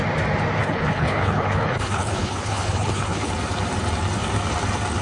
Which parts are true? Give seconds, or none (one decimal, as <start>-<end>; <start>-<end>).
0.0-0.6; 3.3-5.0